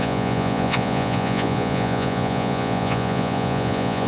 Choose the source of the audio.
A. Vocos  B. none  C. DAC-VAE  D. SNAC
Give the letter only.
A